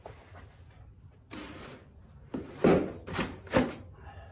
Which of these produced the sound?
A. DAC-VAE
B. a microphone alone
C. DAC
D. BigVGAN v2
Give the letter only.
B